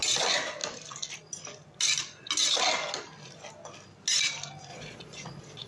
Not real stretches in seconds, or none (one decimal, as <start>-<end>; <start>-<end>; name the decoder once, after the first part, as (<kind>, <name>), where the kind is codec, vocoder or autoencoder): 4.7-5.7 (vocoder, Vocos)